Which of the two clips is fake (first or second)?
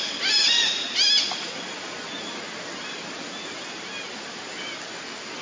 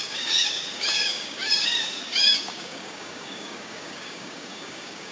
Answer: second